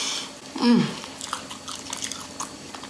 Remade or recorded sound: recorded